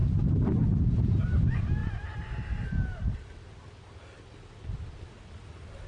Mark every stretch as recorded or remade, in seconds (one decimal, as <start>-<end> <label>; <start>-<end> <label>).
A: 0.0-5.9 recorded